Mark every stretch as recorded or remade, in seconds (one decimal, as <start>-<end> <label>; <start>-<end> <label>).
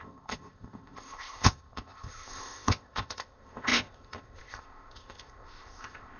0.0-6.2 remade